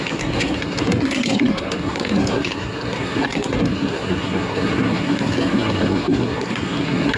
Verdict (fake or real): fake